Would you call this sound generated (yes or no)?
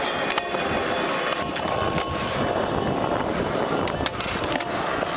no